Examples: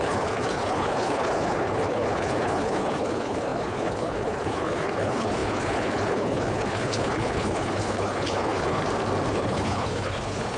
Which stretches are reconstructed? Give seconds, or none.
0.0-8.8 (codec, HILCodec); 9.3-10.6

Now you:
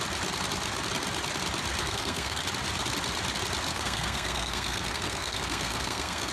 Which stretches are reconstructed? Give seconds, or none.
1.8-2.4 (codec, SNAC); 3.7-6.3

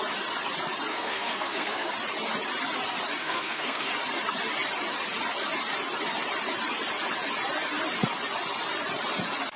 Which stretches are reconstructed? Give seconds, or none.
0.9-1.9 (codec, SNAC); 3.2-3.9